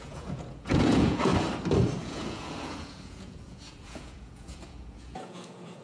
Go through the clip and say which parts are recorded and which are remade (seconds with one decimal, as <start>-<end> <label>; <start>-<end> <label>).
0.0-1.3 remade; 1.3-2.0 recorded; 2.0-5.8 remade